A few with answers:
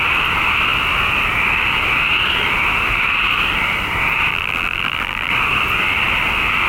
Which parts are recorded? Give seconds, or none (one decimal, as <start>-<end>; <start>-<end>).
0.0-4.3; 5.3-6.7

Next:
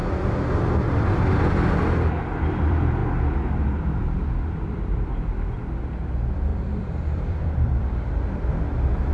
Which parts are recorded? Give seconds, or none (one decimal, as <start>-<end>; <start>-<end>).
3.0-4.0; 5.1-5.8

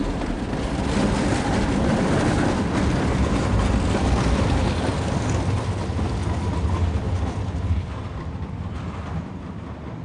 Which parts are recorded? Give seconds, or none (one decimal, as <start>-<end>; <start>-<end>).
6.2-7.4

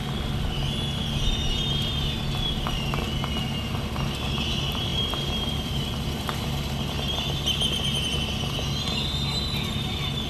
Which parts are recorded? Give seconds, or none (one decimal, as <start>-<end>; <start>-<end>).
0.0-4.9; 6.4-10.3

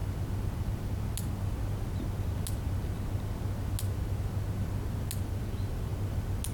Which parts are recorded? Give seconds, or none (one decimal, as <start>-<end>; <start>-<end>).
0.0-6.5